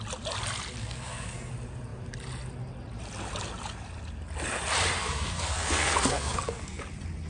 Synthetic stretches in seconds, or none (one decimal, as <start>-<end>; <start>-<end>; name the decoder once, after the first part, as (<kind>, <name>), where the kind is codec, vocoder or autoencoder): 0.8-1.5 (codec, SNAC); 5.0-6.8

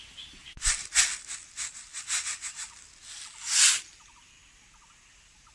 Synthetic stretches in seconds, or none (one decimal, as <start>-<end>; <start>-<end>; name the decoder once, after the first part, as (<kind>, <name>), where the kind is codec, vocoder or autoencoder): none